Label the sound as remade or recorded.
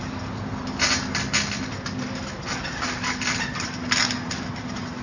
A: recorded